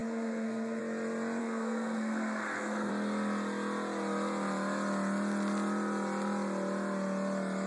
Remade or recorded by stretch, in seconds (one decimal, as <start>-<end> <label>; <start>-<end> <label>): 0.0-0.8 remade; 0.8-1.4 recorded; 1.4-2.9 remade; 2.9-7.7 recorded